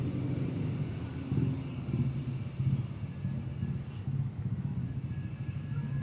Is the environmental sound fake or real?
real